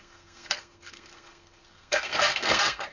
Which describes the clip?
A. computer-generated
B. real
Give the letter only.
A